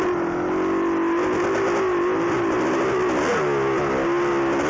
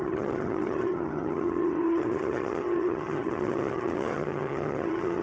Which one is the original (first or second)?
first